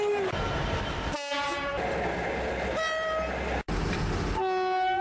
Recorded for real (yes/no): yes